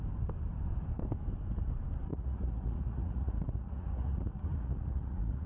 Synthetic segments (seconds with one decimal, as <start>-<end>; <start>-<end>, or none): 2.1-5.5